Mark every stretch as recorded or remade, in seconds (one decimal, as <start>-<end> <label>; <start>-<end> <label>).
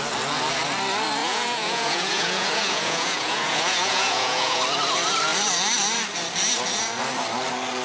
0.0-1.2 recorded; 1.2-4.6 remade; 4.6-7.8 recorded